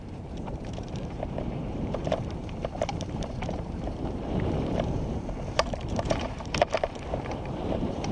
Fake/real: fake